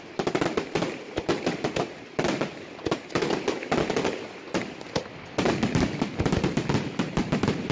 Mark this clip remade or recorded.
recorded